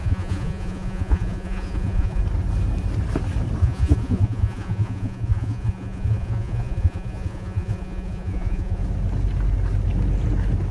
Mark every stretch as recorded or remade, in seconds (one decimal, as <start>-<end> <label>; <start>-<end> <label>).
0.0-2.2 remade; 2.2-3.6 recorded; 3.6-8.8 remade; 8.8-10.7 recorded

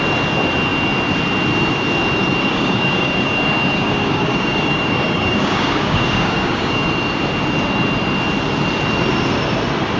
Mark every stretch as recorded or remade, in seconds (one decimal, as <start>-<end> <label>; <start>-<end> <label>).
0.0-2.4 recorded; 2.4-6.9 remade; 6.9-10.0 recorded

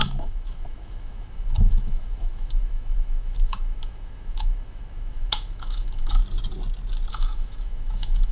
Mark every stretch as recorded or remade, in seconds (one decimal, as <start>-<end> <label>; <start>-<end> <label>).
0.0-6.2 remade; 6.2-7.1 recorded; 7.1-8.3 remade

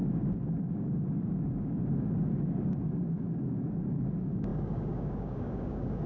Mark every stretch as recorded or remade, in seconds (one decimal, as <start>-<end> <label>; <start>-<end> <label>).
0.0-6.1 remade

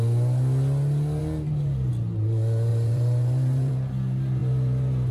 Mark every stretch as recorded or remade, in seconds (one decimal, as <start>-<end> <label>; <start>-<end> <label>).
0.0-2.7 recorded; 2.7-3.9 remade; 3.9-4.4 recorded; 4.4-5.1 remade

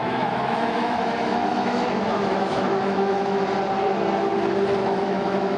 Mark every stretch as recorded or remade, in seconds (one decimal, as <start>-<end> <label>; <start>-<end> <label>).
0.0-3.4 remade; 3.4-4.8 recorded; 4.8-5.6 remade